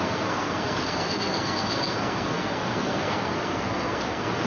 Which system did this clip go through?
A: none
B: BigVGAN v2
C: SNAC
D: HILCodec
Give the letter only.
C